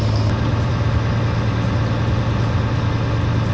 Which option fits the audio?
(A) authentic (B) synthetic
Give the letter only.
A